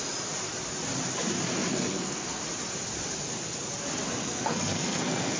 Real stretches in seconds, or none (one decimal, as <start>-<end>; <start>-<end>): 0.0-1.7; 2.4-4.2